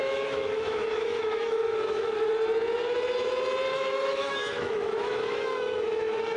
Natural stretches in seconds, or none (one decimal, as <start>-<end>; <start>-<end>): 2.3-3.7